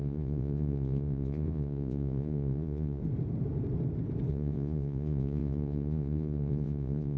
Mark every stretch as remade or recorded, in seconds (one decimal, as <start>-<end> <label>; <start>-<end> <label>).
0.0-3.0 remade; 3.0-4.3 recorded; 4.3-7.2 remade